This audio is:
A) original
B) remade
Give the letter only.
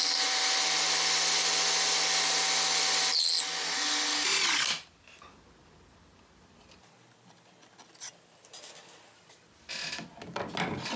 A